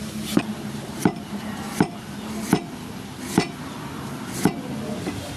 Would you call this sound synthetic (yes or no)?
no